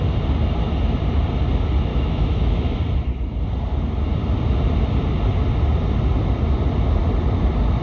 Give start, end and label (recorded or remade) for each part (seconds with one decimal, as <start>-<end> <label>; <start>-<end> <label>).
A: 0.0-1.9 recorded; 1.9-2.8 remade; 2.8-7.8 recorded